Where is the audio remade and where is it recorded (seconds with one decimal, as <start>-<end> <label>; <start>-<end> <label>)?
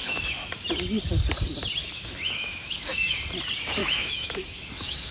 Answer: 0.0-0.7 remade; 0.7-1.8 recorded; 1.8-3.2 remade; 3.2-3.8 recorded; 3.8-5.1 remade